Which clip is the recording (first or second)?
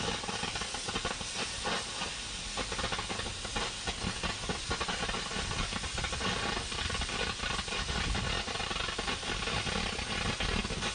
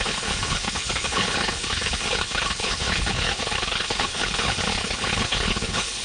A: first